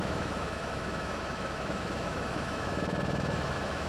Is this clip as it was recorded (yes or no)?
no